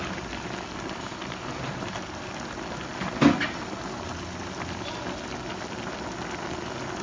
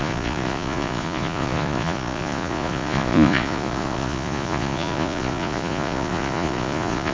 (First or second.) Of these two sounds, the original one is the first